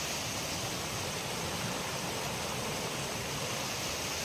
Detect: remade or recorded recorded